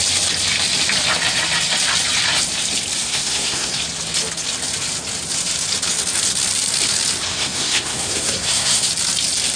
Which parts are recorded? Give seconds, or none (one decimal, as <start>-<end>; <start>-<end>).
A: 0.0-3.0; 3.8-7.3; 8.9-9.6